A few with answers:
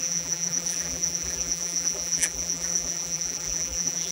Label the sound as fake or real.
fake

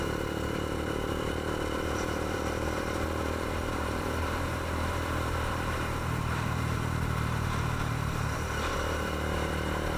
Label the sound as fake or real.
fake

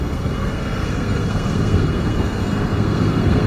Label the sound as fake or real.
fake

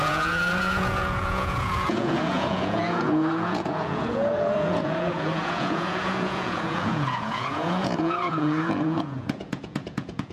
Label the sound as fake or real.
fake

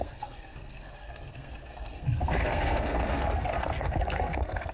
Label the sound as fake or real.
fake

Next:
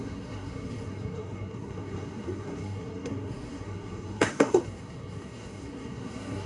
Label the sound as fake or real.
fake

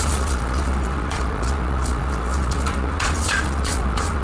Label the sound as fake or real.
fake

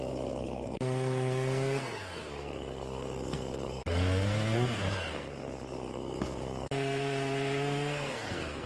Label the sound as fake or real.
fake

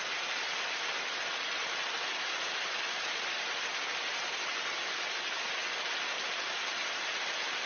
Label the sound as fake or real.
real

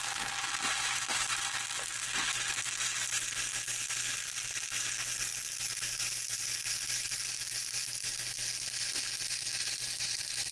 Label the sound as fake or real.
real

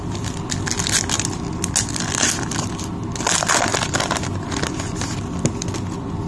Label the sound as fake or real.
real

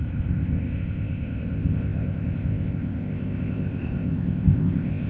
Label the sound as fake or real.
fake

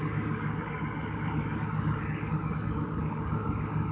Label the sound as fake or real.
fake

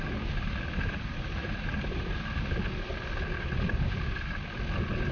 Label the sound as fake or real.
real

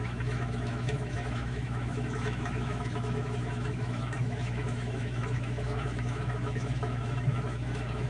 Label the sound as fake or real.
fake